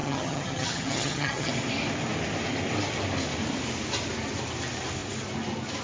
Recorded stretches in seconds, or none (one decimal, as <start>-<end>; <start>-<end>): 1.5-5.8